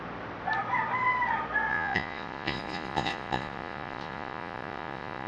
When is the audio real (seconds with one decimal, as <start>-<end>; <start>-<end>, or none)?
0.0-1.7